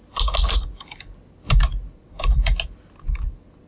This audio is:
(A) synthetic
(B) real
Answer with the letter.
B